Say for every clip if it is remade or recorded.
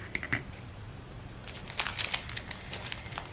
recorded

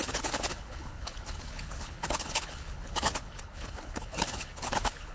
remade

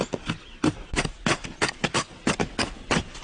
recorded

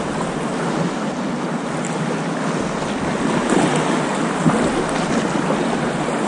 recorded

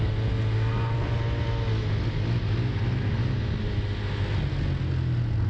recorded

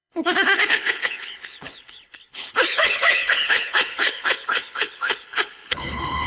remade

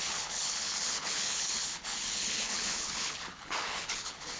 remade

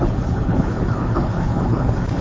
remade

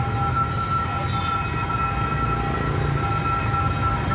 recorded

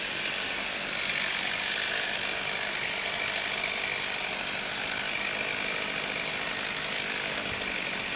recorded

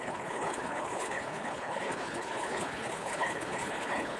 remade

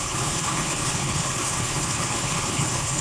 remade